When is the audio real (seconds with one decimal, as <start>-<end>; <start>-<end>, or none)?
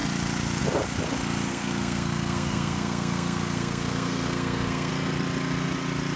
0.0-1.5; 4.9-6.2